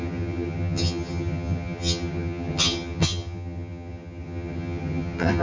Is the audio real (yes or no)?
no